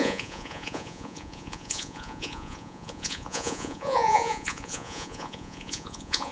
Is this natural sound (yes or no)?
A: no